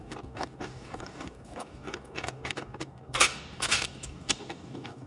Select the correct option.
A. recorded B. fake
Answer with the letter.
B